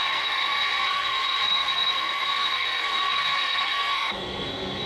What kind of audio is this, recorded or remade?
remade